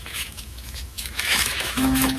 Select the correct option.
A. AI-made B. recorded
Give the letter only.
A